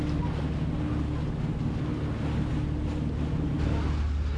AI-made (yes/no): no